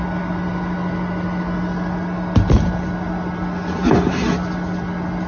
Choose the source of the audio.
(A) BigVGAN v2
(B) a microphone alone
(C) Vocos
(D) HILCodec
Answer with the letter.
B